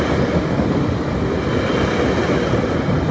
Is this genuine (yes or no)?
yes